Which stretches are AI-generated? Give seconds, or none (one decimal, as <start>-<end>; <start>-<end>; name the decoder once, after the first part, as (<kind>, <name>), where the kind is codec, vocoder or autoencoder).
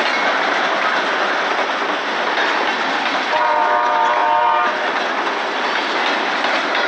none